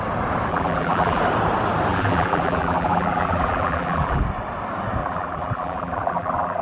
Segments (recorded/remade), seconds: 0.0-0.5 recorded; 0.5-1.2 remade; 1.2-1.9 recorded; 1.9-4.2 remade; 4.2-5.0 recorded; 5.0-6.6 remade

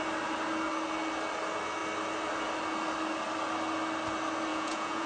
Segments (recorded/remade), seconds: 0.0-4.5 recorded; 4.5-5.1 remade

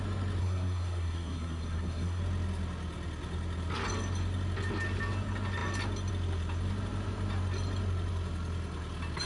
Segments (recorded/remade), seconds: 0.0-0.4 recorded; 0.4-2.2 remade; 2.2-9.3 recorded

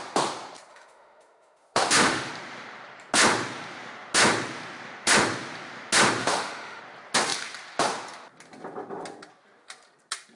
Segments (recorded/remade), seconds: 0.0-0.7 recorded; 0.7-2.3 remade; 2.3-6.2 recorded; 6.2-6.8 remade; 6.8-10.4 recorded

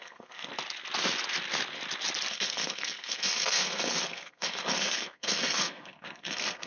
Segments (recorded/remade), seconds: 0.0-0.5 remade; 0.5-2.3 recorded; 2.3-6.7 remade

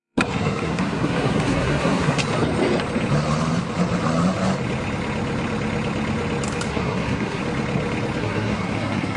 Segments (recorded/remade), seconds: 0.0-2.2 remade; 2.2-6.7 recorded; 6.7-7.4 remade; 7.4-8.2 recorded; 8.2-9.2 remade